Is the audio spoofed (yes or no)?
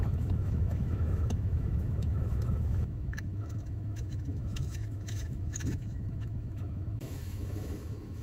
yes